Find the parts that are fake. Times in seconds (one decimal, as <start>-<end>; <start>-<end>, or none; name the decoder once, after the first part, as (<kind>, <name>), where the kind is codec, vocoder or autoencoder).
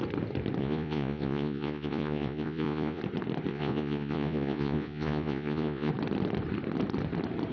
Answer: 0.6-3.0 (vocoder, Vocos); 3.5-5.9